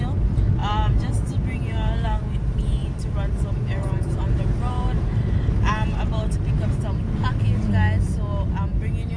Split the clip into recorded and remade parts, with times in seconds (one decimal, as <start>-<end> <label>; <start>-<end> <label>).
0.0-2.8 recorded; 2.8-6.3 remade; 6.3-9.2 recorded